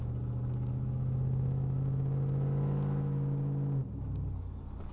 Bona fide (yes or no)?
yes